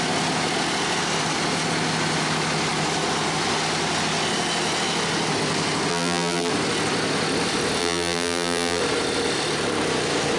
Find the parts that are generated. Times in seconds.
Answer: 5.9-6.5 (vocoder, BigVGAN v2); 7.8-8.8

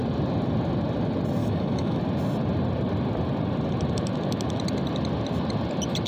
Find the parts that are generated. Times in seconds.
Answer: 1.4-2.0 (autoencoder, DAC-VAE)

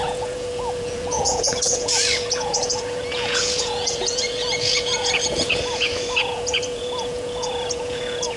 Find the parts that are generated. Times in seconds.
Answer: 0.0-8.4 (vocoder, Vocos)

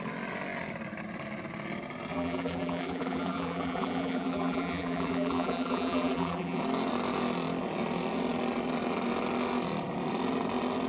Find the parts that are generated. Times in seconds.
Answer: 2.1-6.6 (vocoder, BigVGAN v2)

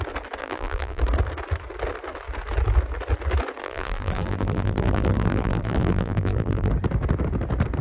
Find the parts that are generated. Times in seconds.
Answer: 0.4-1.0 (vocoder, BigVGAN v2); 3.6-6.7

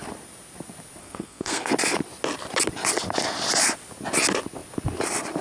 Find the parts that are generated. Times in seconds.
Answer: 1.0-1.7 (codec, SNAC)